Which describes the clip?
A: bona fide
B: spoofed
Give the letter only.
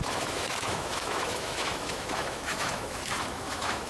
B